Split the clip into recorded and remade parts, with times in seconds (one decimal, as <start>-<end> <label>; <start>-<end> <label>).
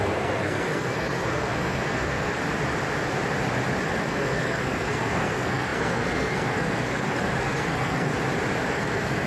0.0-2.4 remade; 2.4-4.0 recorded; 4.0-8.1 remade; 8.1-8.7 recorded; 8.7-9.3 remade